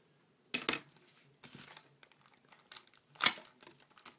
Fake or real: real